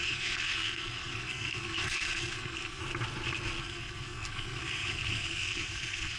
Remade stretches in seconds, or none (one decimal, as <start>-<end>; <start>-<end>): 0.0-2.8; 3.6-6.2